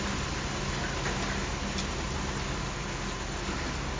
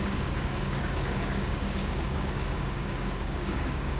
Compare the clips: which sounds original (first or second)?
first